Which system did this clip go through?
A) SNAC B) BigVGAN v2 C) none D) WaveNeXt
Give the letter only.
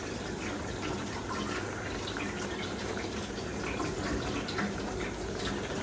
C